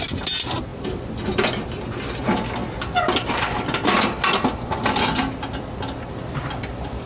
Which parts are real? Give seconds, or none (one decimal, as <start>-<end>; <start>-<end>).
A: 0.0-7.1